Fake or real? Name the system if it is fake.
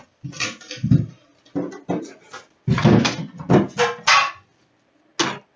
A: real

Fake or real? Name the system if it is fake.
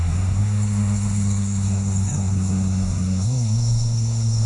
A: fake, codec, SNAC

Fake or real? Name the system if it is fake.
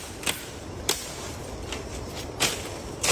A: real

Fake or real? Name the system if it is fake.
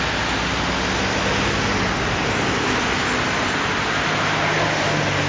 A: real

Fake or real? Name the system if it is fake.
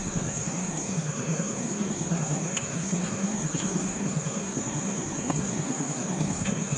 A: fake, codec, SNAC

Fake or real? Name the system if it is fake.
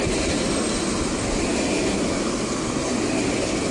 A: real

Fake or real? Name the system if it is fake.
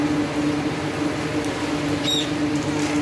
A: real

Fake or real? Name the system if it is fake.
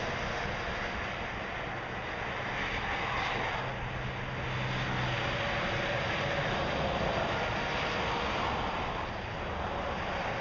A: real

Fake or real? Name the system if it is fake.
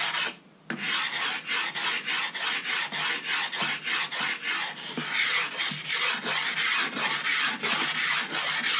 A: real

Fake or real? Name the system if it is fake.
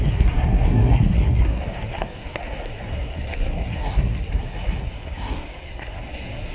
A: fake, codec, SNAC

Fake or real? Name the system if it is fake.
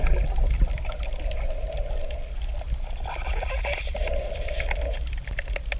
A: real